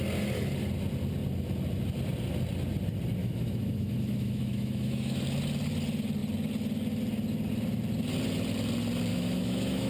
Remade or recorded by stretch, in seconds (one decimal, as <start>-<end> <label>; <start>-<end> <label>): 0.0-3.2 recorded; 3.2-5.2 remade; 5.2-9.1 recorded; 9.1-9.9 remade